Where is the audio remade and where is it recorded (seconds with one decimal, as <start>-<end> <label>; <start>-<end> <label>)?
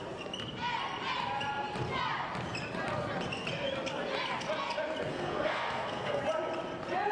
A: 0.0-5.1 recorded; 5.1-6.2 remade; 6.2-7.1 recorded